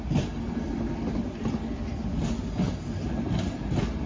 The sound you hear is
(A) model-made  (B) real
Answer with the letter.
B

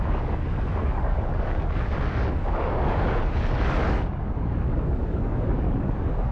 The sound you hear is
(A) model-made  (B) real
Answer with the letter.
A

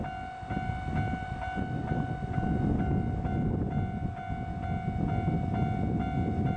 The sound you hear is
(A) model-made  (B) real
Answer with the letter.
B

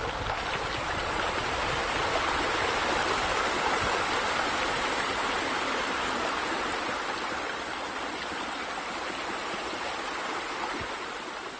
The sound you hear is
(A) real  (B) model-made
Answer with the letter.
A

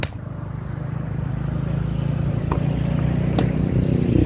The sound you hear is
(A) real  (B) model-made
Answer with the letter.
A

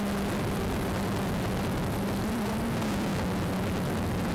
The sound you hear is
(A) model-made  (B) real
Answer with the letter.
B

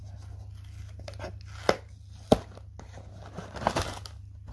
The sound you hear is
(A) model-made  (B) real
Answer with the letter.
B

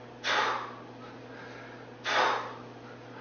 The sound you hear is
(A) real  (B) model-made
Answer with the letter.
A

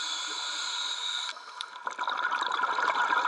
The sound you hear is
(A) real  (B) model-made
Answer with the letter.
A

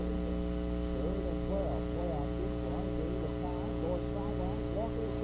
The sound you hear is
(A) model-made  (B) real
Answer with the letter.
B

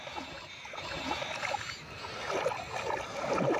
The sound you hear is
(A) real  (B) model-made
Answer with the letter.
A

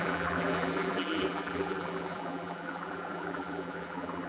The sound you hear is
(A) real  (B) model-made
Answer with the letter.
B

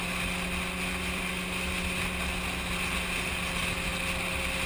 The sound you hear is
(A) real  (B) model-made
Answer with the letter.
A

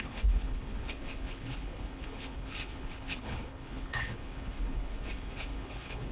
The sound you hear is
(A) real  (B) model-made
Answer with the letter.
B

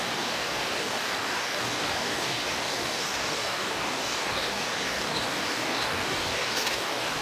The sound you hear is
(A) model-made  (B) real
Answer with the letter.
A